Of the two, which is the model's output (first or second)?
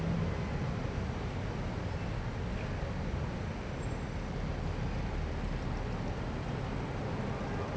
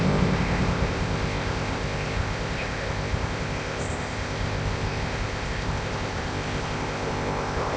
second